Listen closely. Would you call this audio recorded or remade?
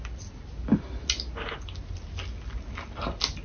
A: recorded